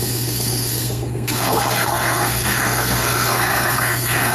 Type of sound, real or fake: fake